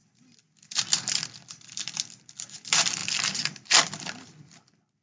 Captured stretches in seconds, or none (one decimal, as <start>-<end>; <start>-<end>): 0.0-1.4; 3.0-3.7